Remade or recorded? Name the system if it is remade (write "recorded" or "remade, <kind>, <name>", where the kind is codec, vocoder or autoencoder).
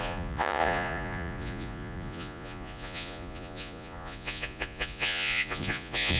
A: remade, vocoder, Vocos